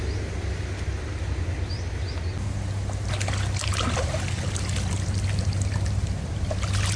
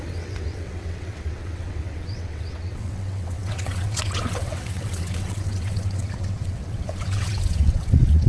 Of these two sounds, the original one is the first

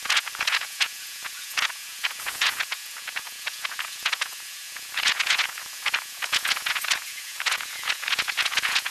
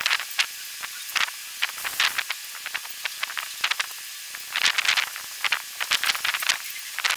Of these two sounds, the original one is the second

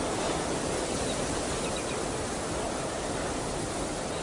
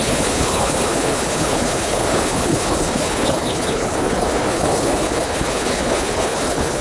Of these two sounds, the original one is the first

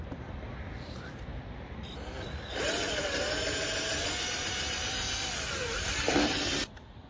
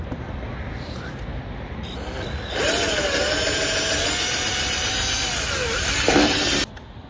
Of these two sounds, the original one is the second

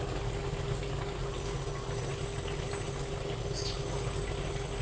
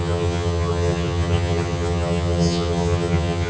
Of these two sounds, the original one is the first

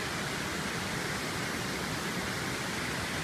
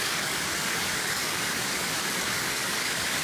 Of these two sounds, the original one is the first